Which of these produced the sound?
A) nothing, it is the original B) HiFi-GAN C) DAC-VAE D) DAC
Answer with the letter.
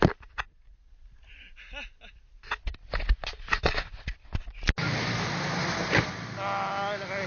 A